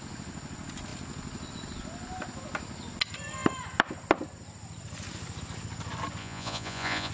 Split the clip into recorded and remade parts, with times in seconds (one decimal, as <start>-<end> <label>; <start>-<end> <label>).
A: 0.0-6.2 recorded; 6.2-7.1 remade